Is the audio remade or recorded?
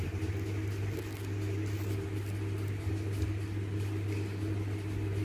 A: recorded